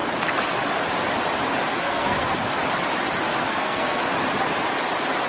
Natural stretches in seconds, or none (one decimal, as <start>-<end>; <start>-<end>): 0.0-1.7; 2.3-3.4; 4.0-5.3